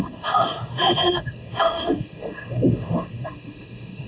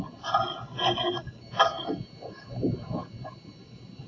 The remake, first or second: first